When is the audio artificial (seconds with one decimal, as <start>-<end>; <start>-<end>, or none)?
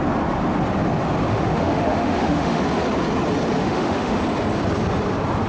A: 1.3-2.6; 3.6-4.2